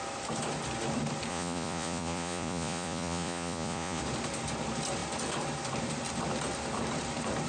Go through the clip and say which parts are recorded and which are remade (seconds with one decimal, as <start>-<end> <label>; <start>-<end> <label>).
0.0-1.3 recorded; 1.3-4.0 remade; 4.0-7.5 recorded